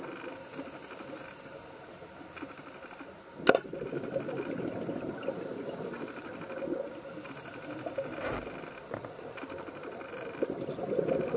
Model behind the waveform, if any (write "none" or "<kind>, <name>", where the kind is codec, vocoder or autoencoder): none